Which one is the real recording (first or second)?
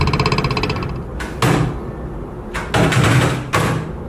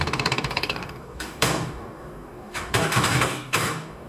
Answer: first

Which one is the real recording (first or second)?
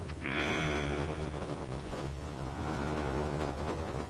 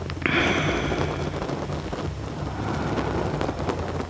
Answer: second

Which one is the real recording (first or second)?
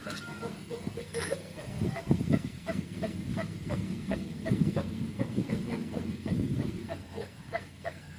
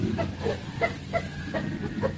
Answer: second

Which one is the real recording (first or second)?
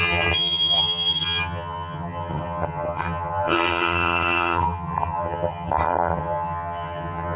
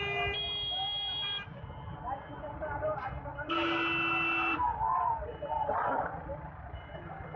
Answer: second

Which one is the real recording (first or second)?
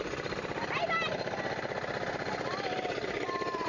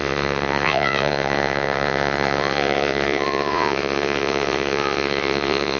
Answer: first